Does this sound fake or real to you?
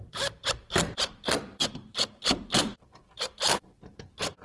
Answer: fake